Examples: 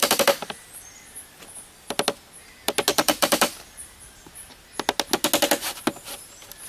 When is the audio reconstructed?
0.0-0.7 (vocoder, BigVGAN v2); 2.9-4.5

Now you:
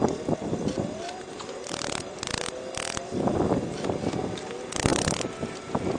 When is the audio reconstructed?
none

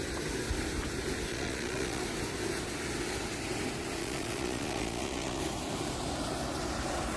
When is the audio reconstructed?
1.3-2.0 (vocoder, Vocos); 4.0-5.4

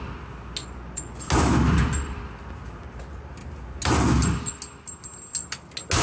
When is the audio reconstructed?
0.6-1.2 (vocoder, Vocos)

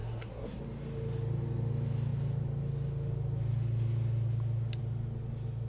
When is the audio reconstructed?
0.0-0.6 (codec, SNAC)